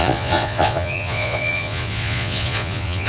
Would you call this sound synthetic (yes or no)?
yes